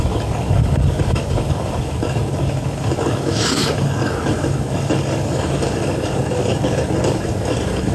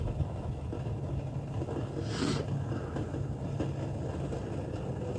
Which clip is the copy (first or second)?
first